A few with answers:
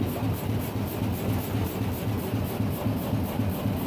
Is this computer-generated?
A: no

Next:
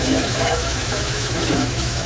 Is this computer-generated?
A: yes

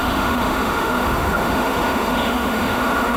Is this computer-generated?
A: yes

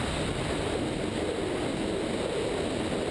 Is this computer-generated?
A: no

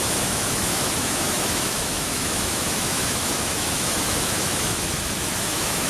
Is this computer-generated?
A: yes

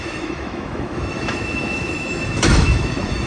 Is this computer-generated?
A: yes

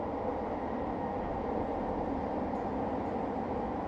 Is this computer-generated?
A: no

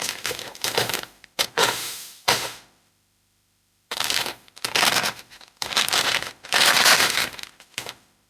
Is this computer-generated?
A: yes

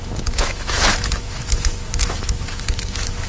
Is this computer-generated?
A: yes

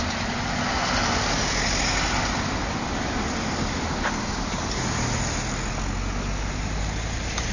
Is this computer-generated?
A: no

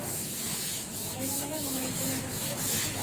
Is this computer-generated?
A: yes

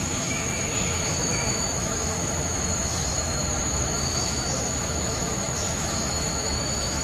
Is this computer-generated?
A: yes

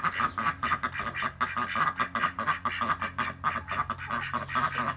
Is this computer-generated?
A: no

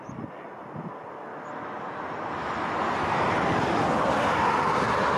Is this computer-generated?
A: no